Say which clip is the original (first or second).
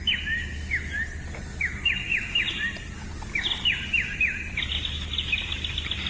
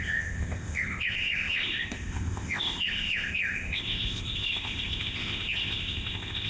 first